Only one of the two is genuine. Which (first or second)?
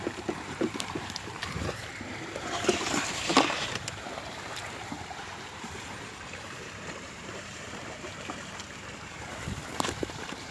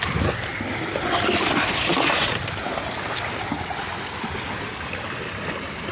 second